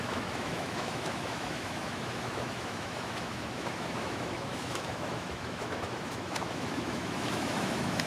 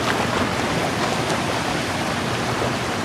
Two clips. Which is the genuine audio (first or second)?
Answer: second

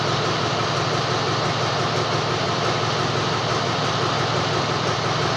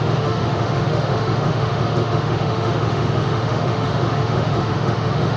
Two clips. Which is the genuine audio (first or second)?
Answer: first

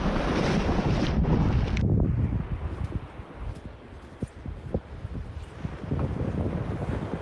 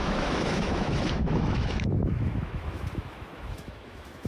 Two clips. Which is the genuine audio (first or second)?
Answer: first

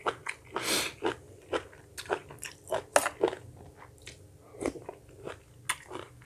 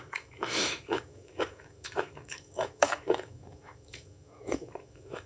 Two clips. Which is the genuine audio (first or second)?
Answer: first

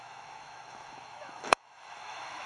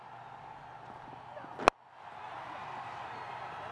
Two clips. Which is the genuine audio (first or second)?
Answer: second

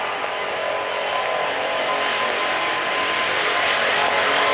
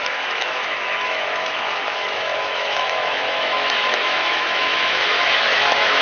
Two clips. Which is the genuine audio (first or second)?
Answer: first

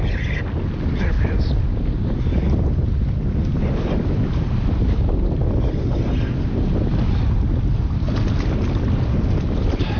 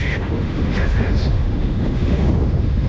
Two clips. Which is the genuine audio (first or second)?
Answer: first